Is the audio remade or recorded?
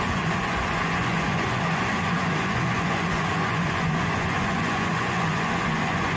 remade